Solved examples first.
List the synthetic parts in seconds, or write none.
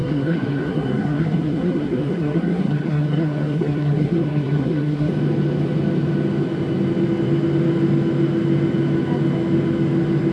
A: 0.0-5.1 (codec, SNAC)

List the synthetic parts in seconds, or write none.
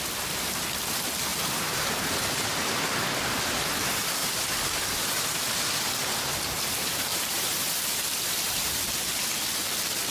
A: 1.3-2.0 (vocoder, BigVGAN v2); 4.2-5.6; 7.1-8.9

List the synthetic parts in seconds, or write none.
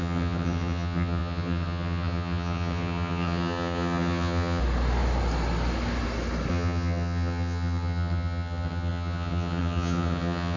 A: 0.0-4.6 (vocoder, HiFi-GAN); 6.5-10.6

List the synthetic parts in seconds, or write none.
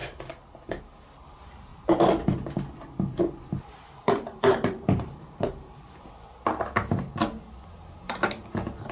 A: 1.7-6.1 (vocoder, BigVGAN v2)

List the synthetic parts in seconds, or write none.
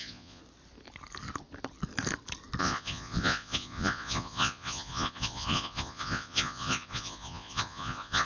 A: 0.0-0.4 (vocoder, Vocos); 2.6-8.3